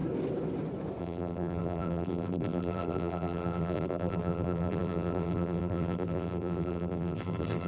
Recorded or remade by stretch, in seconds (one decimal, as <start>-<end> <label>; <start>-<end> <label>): 0.0-1.0 recorded; 1.0-7.7 remade